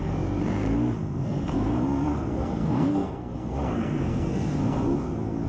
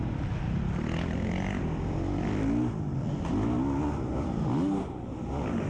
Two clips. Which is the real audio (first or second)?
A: second